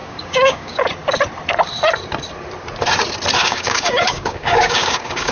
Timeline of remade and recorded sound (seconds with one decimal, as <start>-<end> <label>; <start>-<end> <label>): 0.0-0.8 remade; 0.8-3.4 recorded; 3.4-5.3 remade